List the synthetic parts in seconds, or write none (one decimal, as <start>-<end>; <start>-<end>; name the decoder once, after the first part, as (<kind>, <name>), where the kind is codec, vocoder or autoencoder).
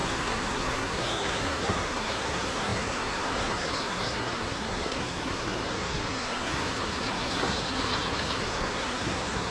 0.0-9.5 (codec, SNAC)